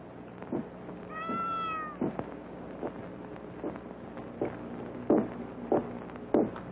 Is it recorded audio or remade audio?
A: recorded